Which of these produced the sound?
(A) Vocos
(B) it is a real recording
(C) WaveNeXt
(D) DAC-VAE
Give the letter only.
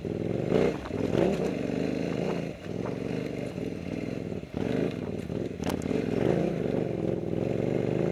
B